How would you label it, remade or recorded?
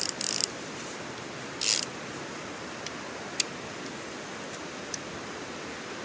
recorded